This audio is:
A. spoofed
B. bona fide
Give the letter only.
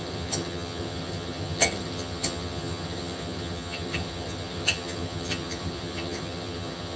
A